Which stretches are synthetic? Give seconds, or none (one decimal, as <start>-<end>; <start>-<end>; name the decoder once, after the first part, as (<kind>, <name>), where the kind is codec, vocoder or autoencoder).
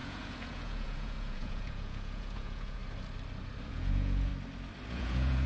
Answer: 0.0-2.8 (vocoder, Vocos); 3.7-4.3; 4.9-5.5